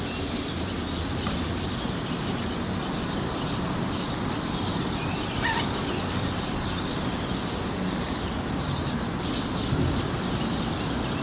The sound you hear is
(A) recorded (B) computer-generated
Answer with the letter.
A